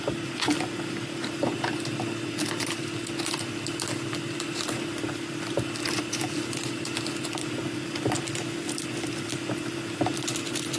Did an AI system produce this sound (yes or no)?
no